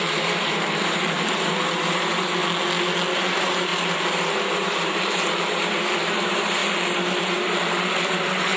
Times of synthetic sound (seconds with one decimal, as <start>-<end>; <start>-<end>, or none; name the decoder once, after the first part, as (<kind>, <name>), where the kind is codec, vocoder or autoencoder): 0.0-2.4 (vocoder, BigVGAN v2); 3.2-6.6; 7.2-8.6